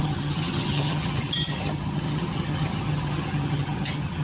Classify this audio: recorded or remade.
remade